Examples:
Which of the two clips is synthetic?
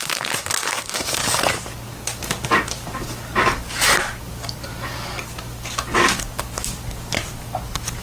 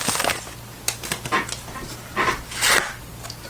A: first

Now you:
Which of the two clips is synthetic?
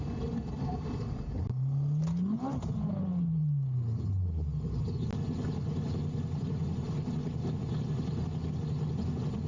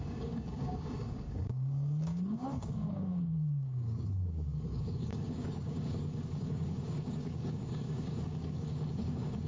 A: second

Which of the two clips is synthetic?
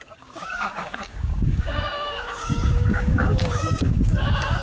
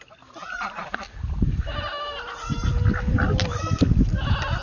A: first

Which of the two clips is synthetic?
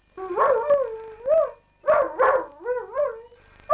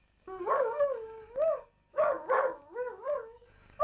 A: second